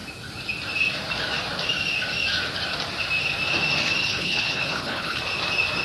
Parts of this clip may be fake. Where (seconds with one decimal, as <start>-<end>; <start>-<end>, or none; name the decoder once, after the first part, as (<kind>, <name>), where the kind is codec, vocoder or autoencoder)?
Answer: 4.0-5.2 (codec, HILCodec)